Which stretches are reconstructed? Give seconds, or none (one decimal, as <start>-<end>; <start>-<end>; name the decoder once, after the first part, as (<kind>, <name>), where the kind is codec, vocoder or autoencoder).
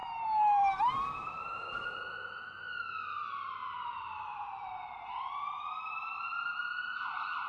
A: 0.0-1.4 (vocoder, BigVGAN v2)